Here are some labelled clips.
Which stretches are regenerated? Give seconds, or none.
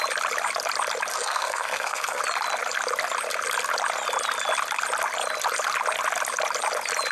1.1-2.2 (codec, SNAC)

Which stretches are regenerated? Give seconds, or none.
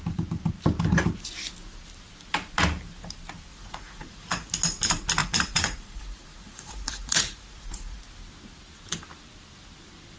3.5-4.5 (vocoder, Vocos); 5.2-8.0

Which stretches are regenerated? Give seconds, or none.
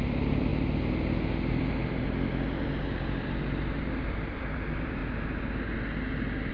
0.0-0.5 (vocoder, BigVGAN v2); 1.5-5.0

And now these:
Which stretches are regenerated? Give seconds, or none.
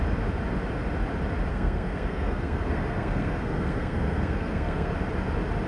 1.5-4.9 (codec, SNAC)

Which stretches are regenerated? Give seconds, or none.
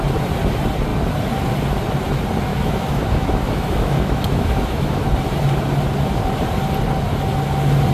2.5-5.1 (autoencoder, DAC-VAE)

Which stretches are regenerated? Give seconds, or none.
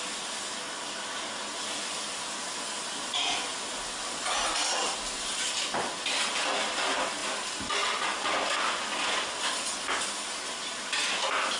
none